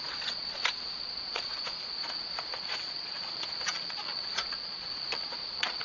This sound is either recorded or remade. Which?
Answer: remade